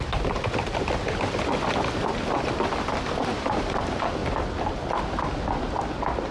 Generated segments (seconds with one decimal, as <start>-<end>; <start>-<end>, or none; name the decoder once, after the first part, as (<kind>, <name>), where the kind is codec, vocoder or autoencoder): 3.3-3.8 (vocoder, BigVGAN v2)